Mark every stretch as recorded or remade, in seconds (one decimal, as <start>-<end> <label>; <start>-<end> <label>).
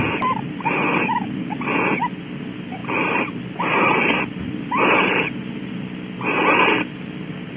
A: 0.0-7.6 recorded